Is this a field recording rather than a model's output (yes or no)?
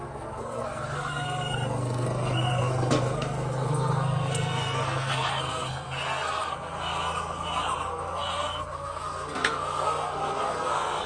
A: no